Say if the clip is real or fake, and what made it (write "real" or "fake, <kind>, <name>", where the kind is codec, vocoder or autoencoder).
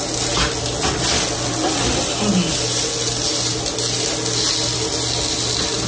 real